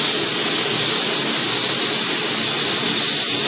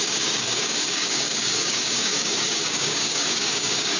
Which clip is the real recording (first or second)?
first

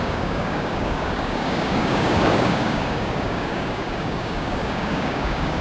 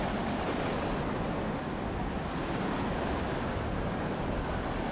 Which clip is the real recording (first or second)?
second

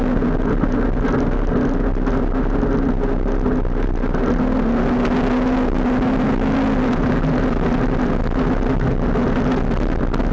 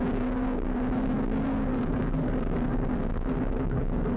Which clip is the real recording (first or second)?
first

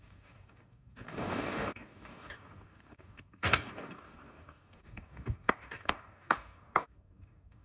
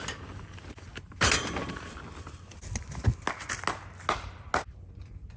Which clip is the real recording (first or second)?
second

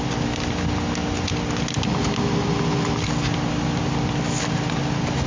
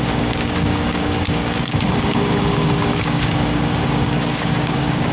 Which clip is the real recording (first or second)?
first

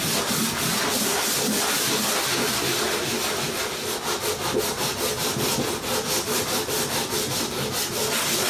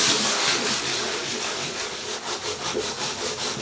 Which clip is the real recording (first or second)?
first